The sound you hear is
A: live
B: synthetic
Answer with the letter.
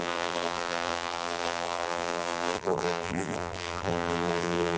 B